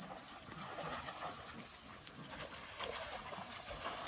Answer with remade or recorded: recorded